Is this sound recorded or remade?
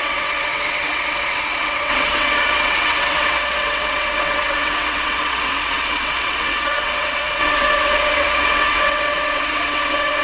remade